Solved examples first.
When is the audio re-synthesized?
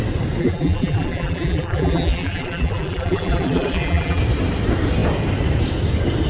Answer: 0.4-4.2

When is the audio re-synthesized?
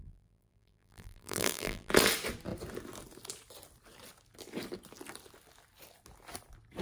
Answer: 0.0-1.9